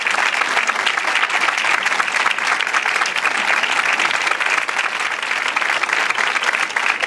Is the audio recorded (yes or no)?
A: yes